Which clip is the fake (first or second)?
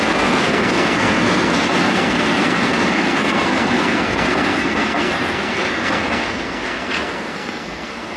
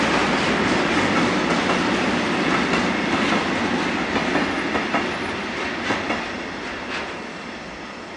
first